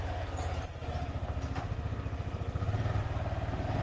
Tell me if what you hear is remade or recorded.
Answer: recorded